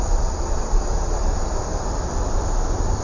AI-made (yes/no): yes